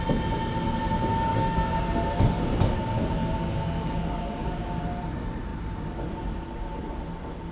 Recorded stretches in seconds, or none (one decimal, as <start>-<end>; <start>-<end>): 0.0-1.3; 1.8-3.2; 4.8-7.5